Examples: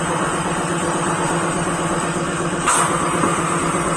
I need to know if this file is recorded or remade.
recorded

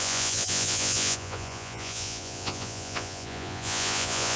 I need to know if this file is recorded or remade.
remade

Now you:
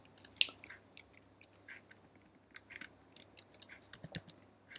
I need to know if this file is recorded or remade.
recorded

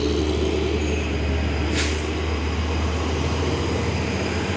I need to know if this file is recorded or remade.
recorded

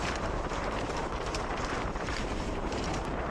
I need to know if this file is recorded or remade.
remade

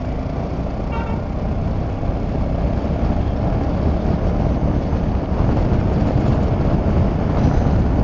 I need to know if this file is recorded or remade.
recorded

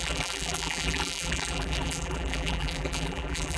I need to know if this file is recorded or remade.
remade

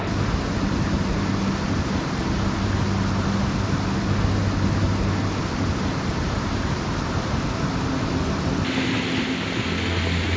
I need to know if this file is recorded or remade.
recorded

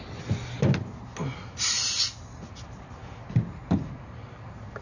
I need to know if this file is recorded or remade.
recorded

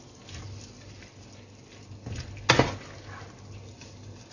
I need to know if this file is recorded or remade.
recorded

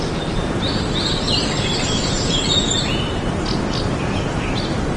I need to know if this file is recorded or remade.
recorded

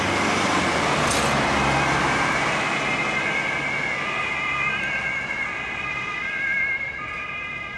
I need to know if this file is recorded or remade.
recorded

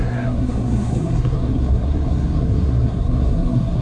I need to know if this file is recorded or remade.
remade